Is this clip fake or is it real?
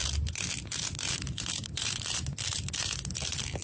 fake